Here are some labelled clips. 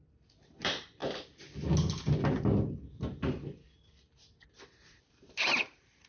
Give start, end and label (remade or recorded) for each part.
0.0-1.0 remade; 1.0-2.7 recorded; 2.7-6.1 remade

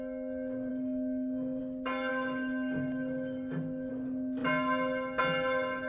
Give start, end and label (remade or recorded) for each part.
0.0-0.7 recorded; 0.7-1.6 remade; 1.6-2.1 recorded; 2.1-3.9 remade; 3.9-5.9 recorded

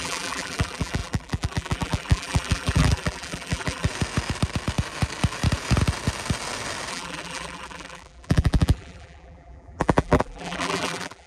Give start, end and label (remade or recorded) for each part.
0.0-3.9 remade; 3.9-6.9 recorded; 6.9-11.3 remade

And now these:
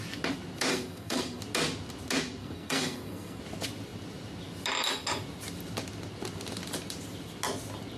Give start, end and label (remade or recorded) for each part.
0.0-0.7 recorded; 0.7-1.4 remade; 1.4-2.4 recorded; 2.4-3.4 remade; 3.4-8.0 recorded